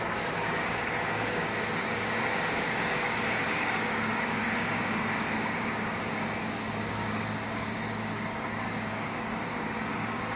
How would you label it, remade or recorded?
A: remade